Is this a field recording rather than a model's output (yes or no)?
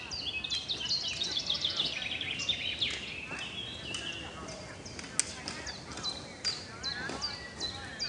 yes